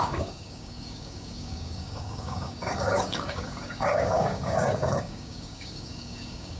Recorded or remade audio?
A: remade